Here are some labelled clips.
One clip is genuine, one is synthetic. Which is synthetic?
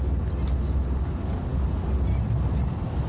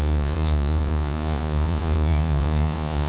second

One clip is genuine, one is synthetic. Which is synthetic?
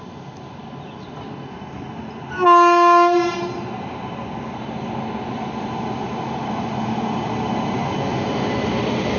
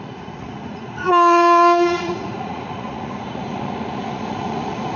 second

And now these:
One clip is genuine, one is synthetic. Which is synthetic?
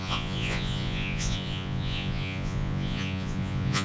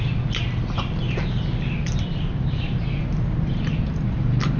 first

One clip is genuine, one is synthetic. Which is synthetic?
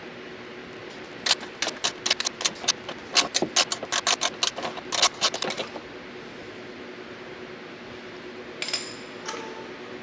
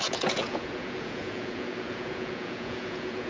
second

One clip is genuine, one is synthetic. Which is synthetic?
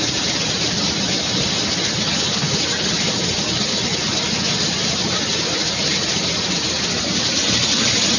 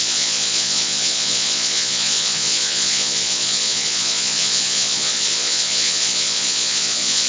second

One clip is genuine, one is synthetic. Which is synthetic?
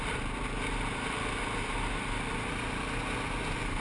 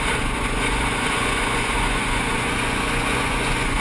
second